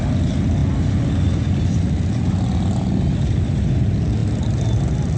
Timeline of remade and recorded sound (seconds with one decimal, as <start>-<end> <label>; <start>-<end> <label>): 0.0-5.2 recorded